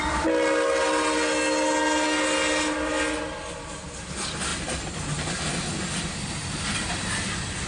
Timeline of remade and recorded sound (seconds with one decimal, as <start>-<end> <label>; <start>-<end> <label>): 0.0-7.7 recorded